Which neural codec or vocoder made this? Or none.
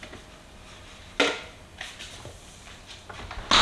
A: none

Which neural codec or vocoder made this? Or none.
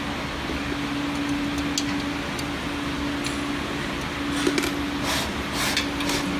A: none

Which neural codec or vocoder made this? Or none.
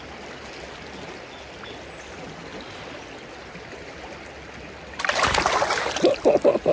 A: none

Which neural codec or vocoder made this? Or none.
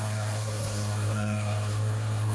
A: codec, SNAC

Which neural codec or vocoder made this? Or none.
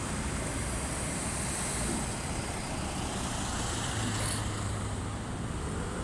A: none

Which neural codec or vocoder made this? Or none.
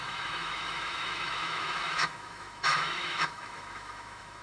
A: autoencoder, DAC-VAE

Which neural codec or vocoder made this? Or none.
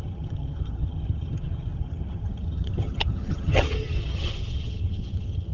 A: vocoder, HiFi-GAN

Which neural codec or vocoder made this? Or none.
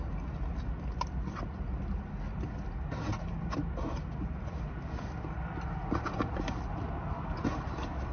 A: none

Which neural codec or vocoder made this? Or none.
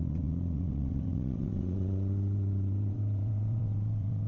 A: vocoder, WaveNeXt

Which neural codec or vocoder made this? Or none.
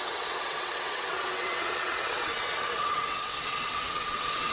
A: vocoder, WaveNeXt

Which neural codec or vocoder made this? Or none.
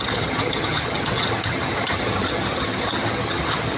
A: vocoder, HiFi-GAN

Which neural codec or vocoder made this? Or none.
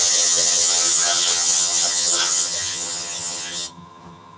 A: vocoder, HiFi-GAN